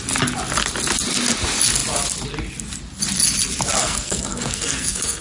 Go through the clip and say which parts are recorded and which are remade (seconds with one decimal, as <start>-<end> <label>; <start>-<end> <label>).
0.0-3.8 recorded; 3.8-5.2 remade